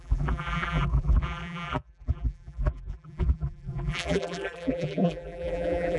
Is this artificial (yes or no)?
yes